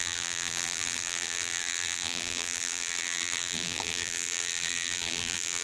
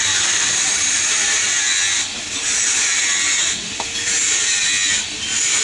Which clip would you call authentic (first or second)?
second